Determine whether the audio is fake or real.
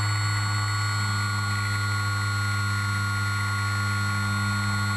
real